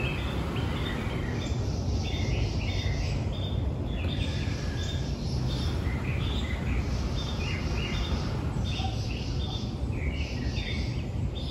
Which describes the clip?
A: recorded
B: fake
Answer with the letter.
A